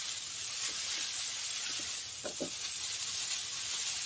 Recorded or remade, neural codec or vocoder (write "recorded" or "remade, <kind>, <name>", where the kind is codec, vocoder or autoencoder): recorded